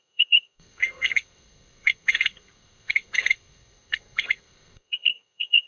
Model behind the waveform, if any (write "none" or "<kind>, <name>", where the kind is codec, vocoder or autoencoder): codec, SNAC